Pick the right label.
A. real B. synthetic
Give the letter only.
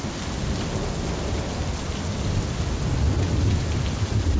A